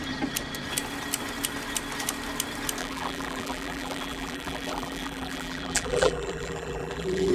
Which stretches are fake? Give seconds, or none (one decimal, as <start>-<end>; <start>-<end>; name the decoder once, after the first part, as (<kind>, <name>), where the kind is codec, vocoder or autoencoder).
2.8-7.3 (vocoder, BigVGAN v2)